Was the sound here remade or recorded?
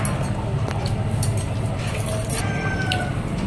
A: recorded